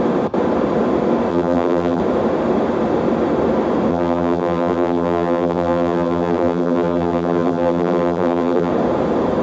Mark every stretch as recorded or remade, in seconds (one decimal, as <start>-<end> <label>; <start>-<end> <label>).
0.0-1.3 recorded; 1.3-2.0 remade; 2.0-3.9 recorded; 3.9-8.7 remade; 8.7-9.4 recorded

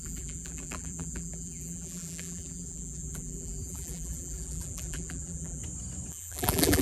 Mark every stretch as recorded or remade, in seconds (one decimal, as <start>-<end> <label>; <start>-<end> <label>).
0.0-5.6 remade; 5.6-6.1 recorded; 6.1-6.8 remade